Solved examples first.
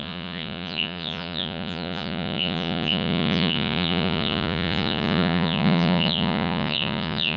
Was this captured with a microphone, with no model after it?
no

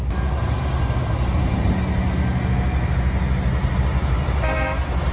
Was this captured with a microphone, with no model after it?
yes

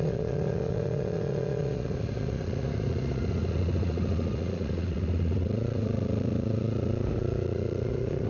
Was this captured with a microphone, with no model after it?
no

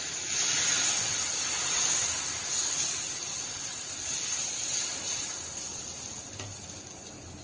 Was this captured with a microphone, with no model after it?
yes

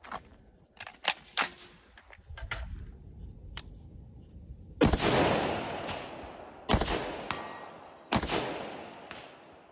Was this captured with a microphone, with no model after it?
yes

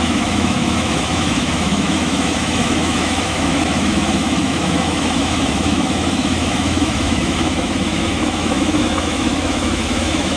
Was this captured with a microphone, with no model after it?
no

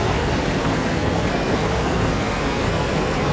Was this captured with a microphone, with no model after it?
no